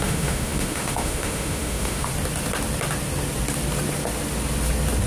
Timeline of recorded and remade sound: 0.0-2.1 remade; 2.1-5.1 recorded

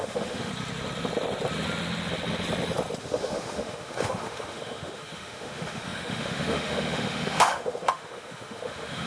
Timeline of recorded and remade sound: 0.0-0.5 remade; 0.5-3.0 recorded; 3.0-9.1 remade

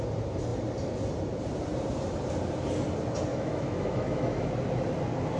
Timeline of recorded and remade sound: 0.0-3.3 recorded; 3.3-4.5 remade; 4.5-5.4 recorded